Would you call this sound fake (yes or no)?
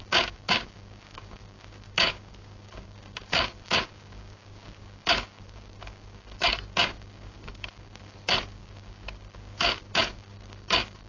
yes